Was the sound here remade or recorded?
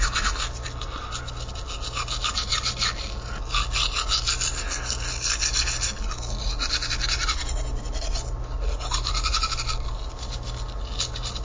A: recorded